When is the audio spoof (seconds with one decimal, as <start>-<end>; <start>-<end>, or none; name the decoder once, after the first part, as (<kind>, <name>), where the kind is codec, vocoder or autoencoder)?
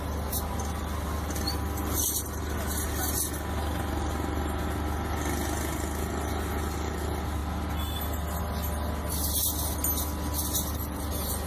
none